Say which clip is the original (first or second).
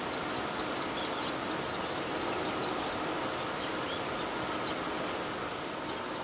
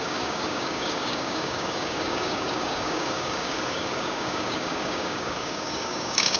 first